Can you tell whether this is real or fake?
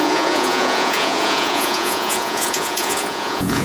fake